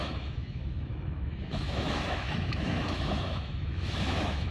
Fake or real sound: fake